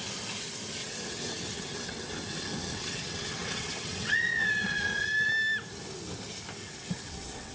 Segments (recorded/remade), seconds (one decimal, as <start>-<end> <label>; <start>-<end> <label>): 0.0-0.8 recorded; 0.8-5.3 remade; 5.3-6.6 recorded; 6.6-7.5 remade